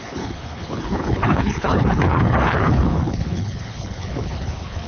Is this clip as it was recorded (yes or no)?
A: no